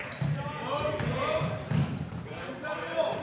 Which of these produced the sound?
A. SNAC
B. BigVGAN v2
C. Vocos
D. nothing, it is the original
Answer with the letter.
D